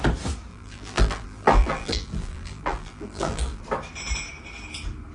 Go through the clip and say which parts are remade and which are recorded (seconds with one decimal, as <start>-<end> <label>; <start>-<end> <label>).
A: 0.0-0.5 recorded; 0.5-3.6 remade; 3.6-5.1 recorded